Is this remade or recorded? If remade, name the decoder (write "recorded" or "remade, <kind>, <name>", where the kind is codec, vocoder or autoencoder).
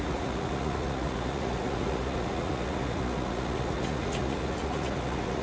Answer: remade, vocoder, Vocos